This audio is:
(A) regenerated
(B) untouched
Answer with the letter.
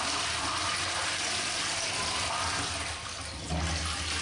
B